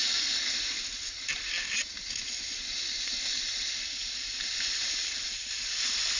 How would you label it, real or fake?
real